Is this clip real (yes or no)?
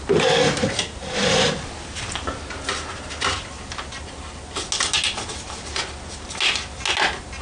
yes